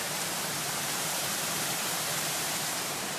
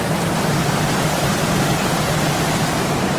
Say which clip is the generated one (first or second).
first